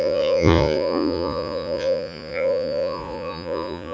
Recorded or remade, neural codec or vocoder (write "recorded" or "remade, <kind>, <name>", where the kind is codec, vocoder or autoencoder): remade, vocoder, Vocos